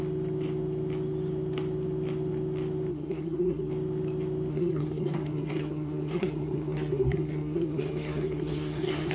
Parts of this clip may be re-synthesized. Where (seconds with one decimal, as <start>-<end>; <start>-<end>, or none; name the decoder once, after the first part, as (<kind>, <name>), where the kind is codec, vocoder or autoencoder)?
2.9-3.7 (codec, SNAC); 4.5-9.1

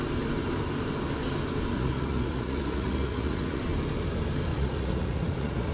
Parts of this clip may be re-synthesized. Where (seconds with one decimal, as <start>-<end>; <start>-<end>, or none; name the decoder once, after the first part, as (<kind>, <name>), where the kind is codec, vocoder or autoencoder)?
1.7-3.6 (vocoder, Vocos); 4.5-5.7

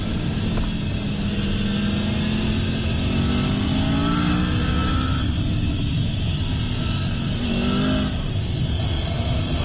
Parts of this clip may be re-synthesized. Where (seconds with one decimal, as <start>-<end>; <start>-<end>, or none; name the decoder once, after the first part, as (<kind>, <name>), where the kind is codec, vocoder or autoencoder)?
none

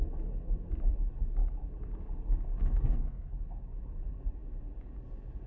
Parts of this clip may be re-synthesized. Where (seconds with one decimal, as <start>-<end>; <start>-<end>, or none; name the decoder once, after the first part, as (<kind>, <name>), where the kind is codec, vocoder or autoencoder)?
2.6-3.3 (codec, SNAC)

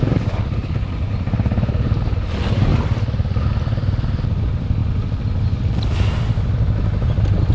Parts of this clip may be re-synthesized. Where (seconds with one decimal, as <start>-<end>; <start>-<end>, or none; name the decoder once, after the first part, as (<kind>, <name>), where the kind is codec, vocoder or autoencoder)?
0.6-2.2 (vocoder, BigVGAN v2); 2.7-3.4

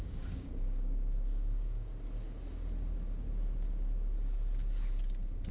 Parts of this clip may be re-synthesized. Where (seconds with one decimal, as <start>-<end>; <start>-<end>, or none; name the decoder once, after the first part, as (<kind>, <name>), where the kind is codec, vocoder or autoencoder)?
0.0-1.9 (codec, DAC)